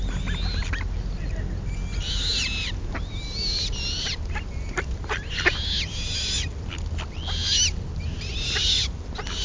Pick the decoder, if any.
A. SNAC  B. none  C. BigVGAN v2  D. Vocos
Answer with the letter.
B